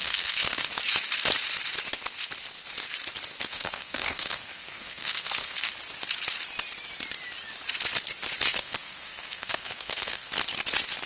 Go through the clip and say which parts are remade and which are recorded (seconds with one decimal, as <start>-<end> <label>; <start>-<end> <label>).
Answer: 0.0-0.7 remade; 0.7-3.5 recorded; 3.5-5.7 remade; 5.7-8.5 recorded; 8.5-10.3 remade; 10.3-11.1 recorded